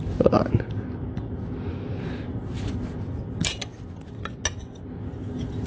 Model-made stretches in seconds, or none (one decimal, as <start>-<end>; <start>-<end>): none